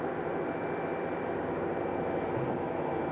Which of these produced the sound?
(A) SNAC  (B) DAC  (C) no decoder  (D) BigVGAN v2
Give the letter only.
C